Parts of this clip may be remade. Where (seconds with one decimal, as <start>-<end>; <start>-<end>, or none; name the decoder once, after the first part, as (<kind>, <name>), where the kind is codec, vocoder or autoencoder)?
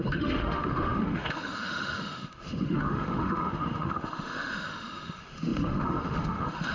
0.0-6.7 (autoencoder, DAC-VAE)